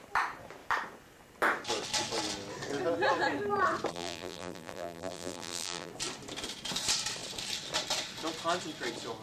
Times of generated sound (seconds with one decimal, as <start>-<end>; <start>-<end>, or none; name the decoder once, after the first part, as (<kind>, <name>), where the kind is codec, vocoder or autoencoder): 3.9-5.9 (vocoder, BigVGAN v2)